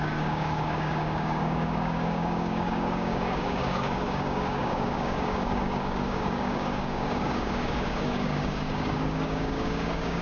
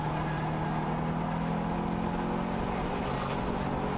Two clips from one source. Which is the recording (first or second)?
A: second